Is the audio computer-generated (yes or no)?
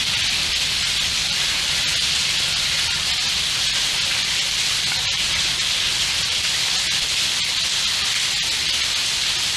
no